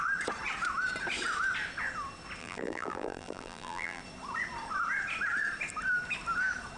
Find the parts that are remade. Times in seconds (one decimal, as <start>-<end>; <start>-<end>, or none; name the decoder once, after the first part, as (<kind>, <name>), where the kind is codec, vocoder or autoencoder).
2.4-4.0 (vocoder, BigVGAN v2)